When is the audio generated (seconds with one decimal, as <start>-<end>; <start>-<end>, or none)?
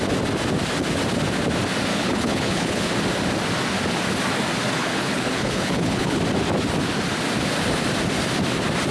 1.9-2.9; 4.8-6.2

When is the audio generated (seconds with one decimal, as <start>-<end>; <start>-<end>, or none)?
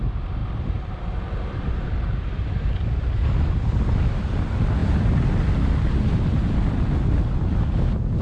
0.4-2.7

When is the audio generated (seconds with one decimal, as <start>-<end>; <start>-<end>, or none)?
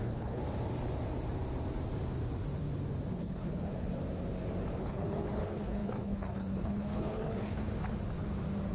0.0-0.4; 3.1-4.0; 4.8-7.7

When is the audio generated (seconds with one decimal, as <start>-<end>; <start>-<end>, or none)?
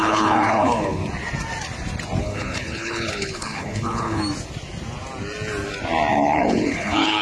0.0-1.0; 2.2-4.2; 6.1-7.2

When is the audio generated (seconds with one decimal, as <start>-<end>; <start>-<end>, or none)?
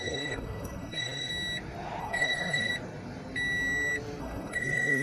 0.0-1.3; 2.0-2.7; 4.2-5.0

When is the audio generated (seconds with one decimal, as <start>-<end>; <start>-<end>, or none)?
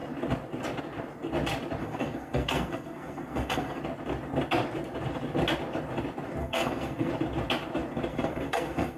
1.8-3.8; 6.4-7.1; 8.1-9.0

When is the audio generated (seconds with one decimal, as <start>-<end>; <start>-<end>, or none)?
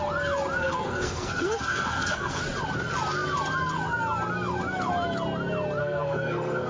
0.6-2.4; 5.8-6.7